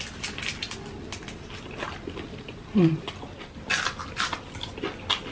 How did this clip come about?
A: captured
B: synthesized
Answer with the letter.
A